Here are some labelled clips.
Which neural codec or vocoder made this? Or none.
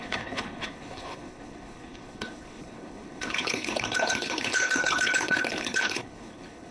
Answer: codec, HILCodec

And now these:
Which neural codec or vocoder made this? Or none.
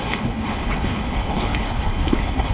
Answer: codec, HILCodec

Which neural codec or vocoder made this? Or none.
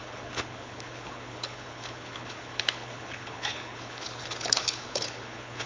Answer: codec, HILCodec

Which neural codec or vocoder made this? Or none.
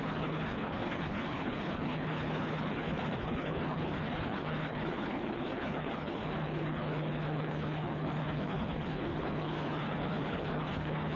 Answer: codec, HILCodec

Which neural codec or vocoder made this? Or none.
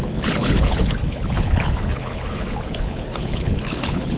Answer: codec, HILCodec